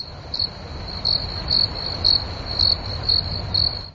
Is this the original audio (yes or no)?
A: yes